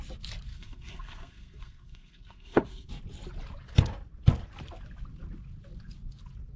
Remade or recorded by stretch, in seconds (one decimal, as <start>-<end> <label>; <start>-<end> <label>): 0.0-0.5 recorded; 0.5-2.9 remade; 2.9-6.6 recorded